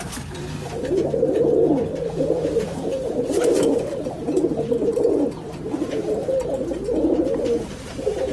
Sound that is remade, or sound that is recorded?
remade